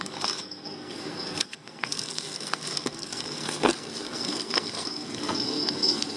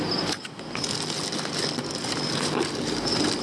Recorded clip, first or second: second